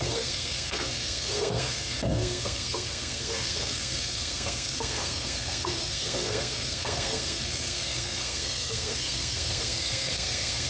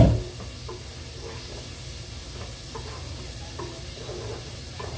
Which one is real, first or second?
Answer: second